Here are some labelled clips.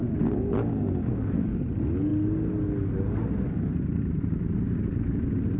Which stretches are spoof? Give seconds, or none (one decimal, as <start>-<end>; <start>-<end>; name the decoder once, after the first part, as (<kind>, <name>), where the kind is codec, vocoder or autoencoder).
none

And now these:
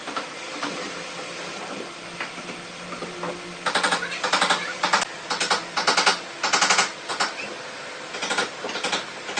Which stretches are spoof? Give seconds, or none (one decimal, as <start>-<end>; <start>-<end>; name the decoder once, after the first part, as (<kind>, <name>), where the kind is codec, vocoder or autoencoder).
0.0-0.9 (vocoder, BigVGAN v2)

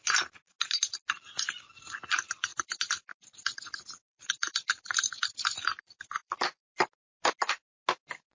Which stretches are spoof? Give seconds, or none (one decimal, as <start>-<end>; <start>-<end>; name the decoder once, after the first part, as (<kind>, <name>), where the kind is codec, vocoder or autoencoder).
2.5-6.6 (vocoder, BigVGAN v2)